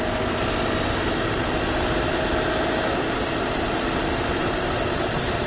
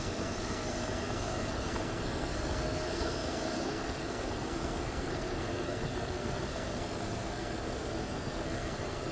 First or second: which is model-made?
second